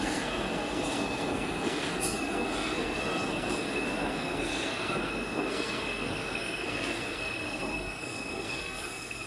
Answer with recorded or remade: remade